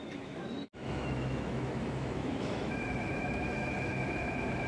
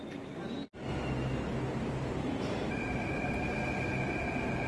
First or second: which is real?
second